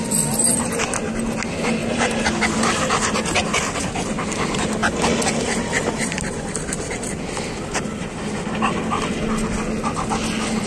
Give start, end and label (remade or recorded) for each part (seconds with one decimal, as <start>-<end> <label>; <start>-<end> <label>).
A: 0.0-1.8 recorded; 1.8-2.3 remade; 2.3-10.7 recorded